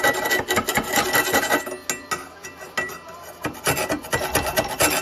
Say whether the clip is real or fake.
real